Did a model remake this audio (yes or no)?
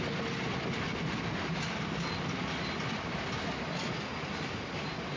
no